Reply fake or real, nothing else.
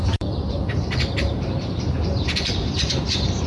fake